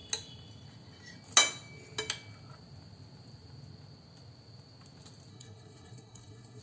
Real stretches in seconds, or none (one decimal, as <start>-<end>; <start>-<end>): 0.0-5.3